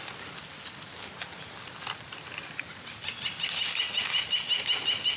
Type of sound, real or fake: real